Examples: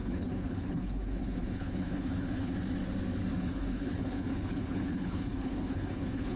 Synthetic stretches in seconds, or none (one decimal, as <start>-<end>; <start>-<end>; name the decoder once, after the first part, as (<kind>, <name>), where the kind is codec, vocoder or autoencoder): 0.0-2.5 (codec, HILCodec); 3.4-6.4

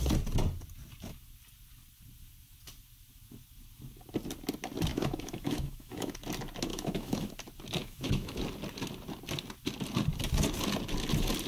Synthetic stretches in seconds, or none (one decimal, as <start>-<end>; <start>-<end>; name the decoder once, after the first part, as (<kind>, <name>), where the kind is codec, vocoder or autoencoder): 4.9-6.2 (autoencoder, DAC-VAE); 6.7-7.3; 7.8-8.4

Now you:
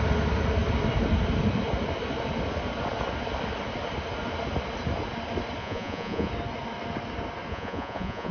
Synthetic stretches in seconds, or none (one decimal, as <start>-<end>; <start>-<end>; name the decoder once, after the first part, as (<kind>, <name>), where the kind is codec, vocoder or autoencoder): 5.6-6.3 (vocoder, Vocos); 7.5-8.3